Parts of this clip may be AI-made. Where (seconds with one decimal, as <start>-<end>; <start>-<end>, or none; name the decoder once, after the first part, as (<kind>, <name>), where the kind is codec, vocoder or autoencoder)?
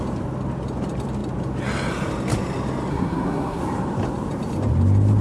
2.9-3.6 (codec, SNAC)